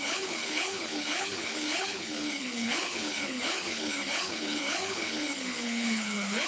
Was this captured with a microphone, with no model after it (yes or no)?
no